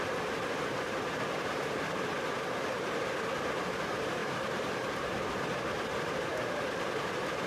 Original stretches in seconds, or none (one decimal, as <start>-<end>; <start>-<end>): 0.0-7.5